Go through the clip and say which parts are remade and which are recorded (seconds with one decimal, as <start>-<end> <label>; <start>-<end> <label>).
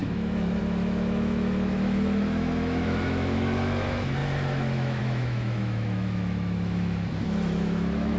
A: 0.0-8.2 remade